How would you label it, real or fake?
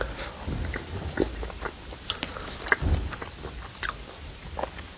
real